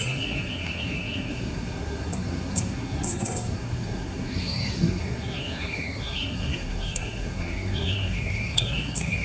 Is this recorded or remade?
remade